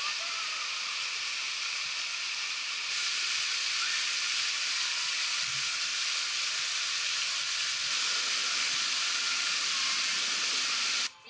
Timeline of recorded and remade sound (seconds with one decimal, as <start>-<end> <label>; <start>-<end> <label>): 0.0-11.3 recorded